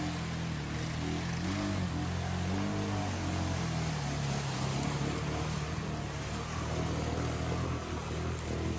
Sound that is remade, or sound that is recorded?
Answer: recorded